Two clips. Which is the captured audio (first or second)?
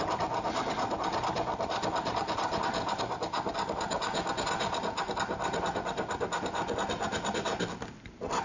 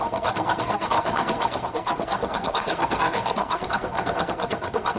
first